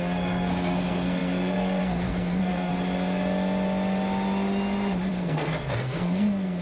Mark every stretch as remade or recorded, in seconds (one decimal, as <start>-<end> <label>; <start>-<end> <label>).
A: 0.0-2.7 remade; 2.7-5.1 recorded; 5.1-6.6 remade